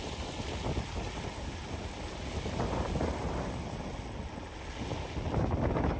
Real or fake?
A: real